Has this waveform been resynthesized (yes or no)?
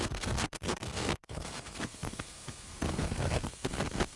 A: yes